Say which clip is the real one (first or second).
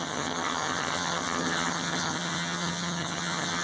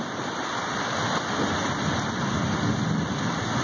second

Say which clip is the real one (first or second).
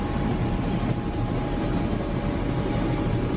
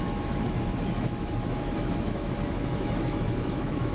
first